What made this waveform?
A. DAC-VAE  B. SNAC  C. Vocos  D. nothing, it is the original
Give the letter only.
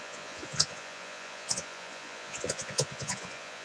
C